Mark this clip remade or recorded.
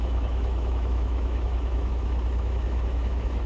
remade